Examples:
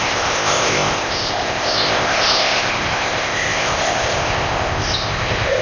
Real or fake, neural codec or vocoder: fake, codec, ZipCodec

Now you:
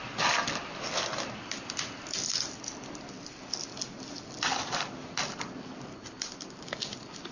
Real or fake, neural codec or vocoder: real